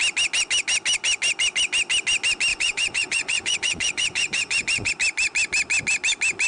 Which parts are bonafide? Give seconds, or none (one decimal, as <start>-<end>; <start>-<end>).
0.0-2.5; 4.9-6.5